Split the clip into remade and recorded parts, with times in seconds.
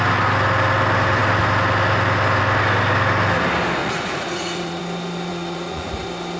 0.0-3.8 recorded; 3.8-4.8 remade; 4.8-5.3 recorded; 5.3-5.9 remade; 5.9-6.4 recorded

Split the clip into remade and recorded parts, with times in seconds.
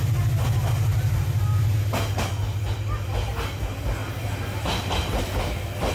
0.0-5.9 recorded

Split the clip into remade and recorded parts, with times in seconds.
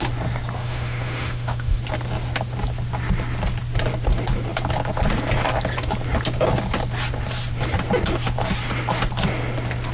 0.0-0.6 recorded; 0.6-1.8 remade; 1.8-9.9 recorded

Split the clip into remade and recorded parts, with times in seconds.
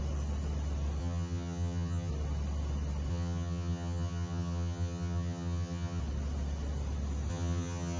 0.0-1.0 recorded; 1.0-2.1 remade; 2.1-3.1 recorded; 3.1-6.0 remade; 6.0-7.3 recorded; 7.3-8.0 remade